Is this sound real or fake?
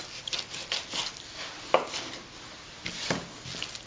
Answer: real